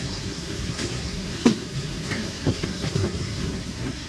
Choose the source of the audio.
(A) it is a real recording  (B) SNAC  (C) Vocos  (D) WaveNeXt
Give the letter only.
B